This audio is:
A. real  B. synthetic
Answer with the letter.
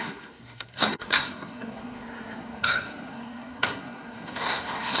B